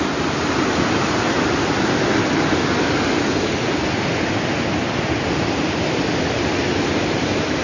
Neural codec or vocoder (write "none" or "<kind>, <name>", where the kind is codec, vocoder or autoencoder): none